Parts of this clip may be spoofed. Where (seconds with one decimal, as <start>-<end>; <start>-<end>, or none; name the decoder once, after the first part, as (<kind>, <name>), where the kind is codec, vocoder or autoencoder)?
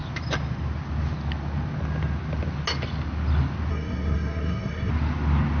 3.7-4.9 (codec, SNAC)